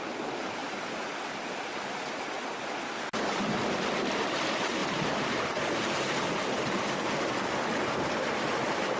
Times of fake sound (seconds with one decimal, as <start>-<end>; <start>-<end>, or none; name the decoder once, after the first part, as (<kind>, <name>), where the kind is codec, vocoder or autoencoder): 0.6-2.1 (vocoder, BigVGAN v2); 4.8-7.3